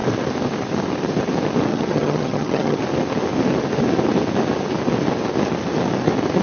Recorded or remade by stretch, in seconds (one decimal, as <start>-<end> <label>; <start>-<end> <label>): 0.0-1.7 recorded; 1.7-2.8 remade; 2.8-6.4 recorded